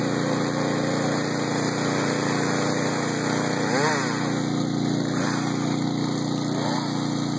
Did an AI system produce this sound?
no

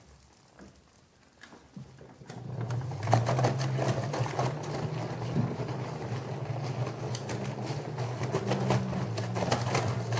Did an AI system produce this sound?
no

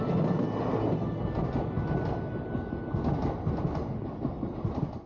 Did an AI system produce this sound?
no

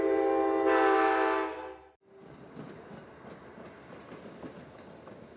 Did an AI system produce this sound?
no